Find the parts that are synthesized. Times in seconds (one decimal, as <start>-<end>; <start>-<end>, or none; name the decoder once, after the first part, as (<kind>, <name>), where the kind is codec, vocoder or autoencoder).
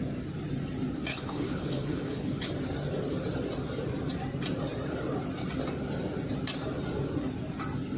1.1-2.5 (codec, HILCodec)